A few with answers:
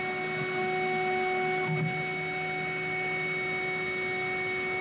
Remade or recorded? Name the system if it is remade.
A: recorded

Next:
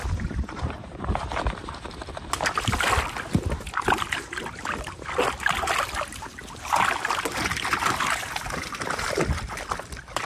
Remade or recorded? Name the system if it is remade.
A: recorded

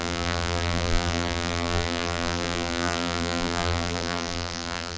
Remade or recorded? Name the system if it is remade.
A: remade, vocoder, BigVGAN v2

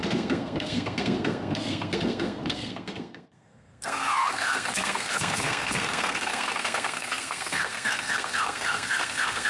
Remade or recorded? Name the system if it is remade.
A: remade, codec, SNAC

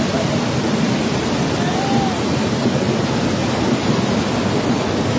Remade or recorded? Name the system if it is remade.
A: recorded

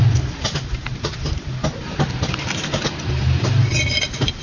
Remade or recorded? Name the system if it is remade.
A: recorded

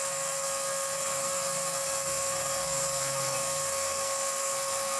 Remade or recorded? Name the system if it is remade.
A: remade, codec, SNAC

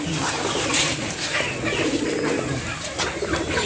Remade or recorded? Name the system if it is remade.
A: remade, vocoder, BigVGAN v2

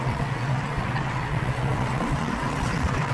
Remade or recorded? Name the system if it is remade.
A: remade, vocoder, WaveNeXt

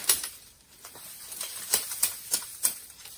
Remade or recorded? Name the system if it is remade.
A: remade, vocoder, BigVGAN v2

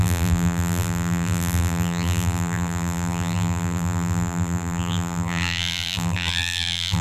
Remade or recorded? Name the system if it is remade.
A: remade, vocoder, BigVGAN v2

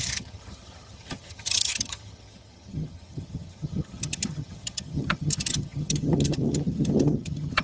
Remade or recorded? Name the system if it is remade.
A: remade, vocoder, HiFi-GAN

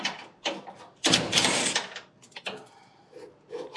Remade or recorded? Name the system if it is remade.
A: recorded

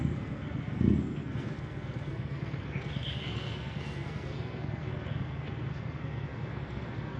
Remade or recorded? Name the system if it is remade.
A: remade, codec, SNAC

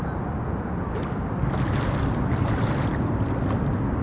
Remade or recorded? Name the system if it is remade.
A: recorded